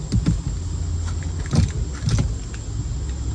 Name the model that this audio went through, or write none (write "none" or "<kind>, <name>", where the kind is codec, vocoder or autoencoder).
none